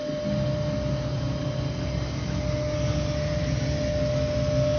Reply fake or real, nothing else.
real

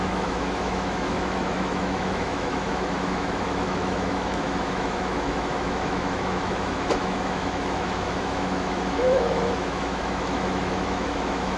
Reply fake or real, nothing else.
fake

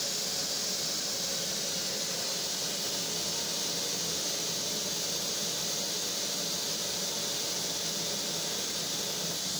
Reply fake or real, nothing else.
real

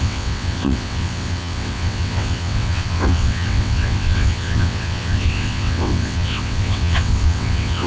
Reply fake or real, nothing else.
fake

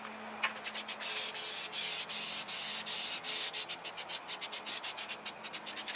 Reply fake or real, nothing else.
real